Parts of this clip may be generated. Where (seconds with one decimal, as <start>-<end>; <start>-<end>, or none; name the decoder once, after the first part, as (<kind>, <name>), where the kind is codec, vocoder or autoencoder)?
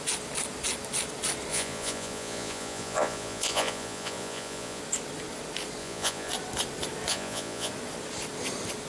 1.5-4.8 (vocoder, Vocos); 5.8-6.3; 7.1-7.7